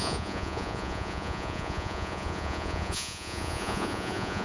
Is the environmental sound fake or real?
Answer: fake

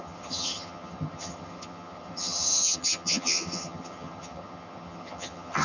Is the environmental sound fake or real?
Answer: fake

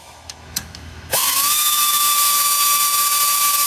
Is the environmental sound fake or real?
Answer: fake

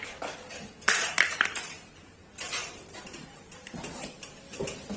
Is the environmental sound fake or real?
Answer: fake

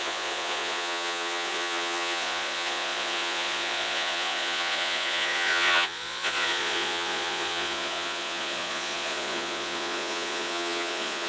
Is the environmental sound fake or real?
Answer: fake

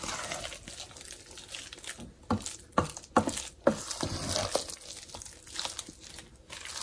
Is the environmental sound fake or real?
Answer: real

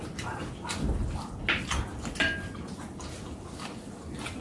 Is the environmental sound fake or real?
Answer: real